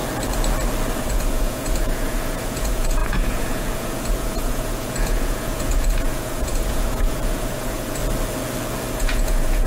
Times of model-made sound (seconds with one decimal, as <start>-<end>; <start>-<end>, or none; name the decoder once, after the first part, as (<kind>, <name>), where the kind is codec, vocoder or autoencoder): 1.0-8.0 (vocoder, Vocos); 8.9-9.7